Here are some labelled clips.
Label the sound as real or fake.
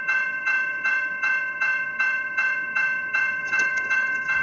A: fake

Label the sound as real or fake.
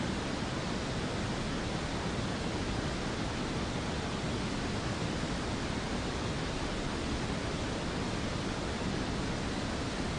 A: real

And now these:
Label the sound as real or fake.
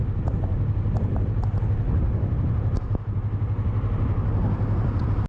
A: real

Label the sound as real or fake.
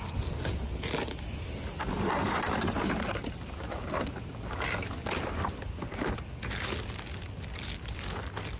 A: real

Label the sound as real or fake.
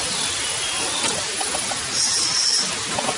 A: real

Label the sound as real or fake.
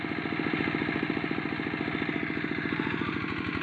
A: real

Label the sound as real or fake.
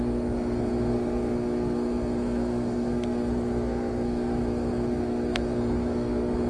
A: fake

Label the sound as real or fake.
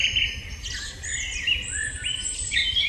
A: real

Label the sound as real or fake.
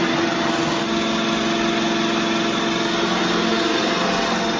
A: real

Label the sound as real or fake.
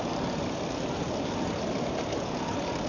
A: fake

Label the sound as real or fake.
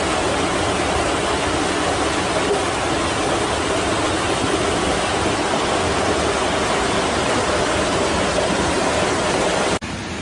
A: real